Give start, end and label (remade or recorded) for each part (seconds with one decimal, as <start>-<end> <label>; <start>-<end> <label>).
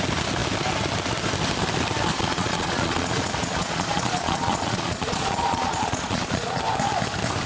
0.0-2.1 recorded; 2.1-6.6 remade; 6.6-7.5 recorded